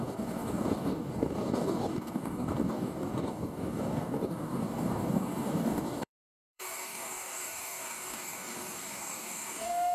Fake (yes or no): yes